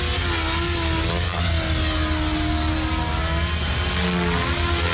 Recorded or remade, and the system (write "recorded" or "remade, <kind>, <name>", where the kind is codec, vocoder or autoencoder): recorded